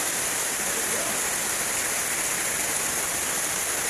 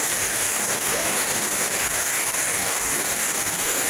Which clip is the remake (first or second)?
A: second